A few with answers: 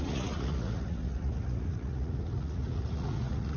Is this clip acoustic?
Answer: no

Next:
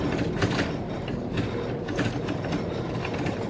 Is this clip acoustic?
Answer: yes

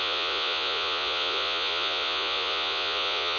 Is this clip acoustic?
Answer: no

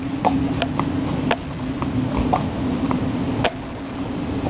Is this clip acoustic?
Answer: yes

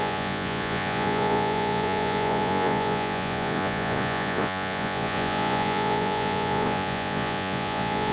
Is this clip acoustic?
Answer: no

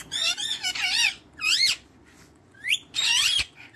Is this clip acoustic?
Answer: no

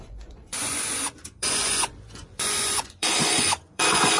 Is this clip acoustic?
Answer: no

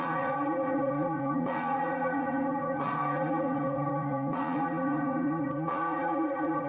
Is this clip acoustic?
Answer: no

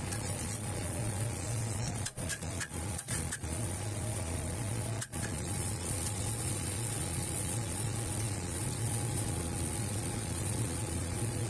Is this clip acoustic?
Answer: no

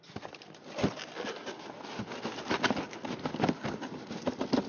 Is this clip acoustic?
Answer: yes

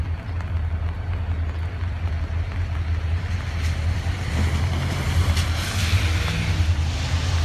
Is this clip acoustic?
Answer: yes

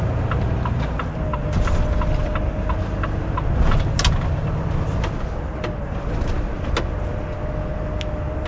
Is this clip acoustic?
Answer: yes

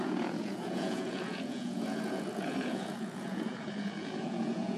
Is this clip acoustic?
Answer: no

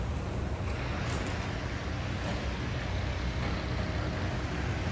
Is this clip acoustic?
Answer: yes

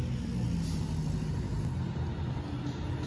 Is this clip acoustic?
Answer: yes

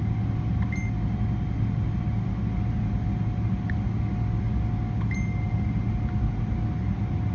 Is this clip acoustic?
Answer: yes